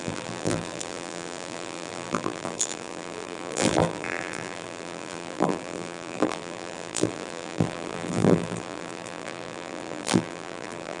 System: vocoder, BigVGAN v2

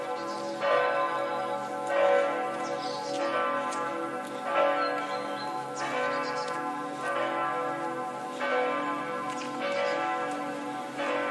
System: none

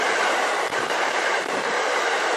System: vocoder, BigVGAN v2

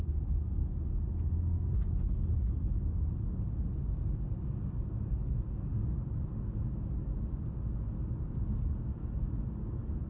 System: none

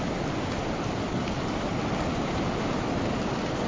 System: vocoder, BigVGAN v2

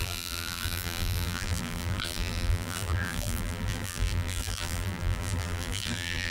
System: vocoder, BigVGAN v2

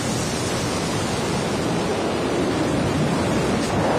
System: none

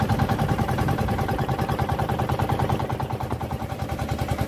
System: vocoder, BigVGAN v2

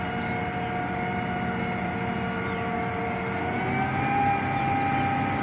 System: none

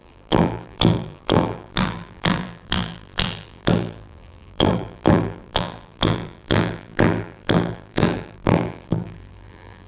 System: vocoder, BigVGAN v2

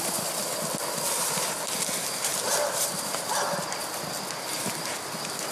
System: vocoder, BigVGAN v2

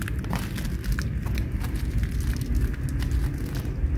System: none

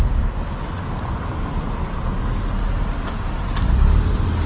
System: none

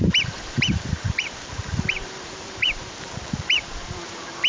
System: vocoder, BigVGAN v2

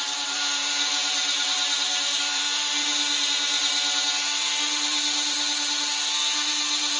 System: vocoder, BigVGAN v2